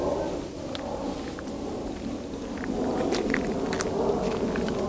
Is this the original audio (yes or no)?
yes